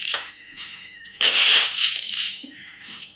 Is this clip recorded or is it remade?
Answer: remade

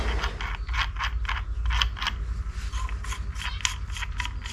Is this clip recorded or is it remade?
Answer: recorded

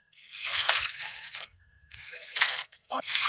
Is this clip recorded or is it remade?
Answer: remade